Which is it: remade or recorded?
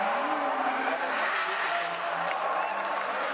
recorded